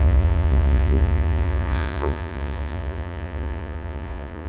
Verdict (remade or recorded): remade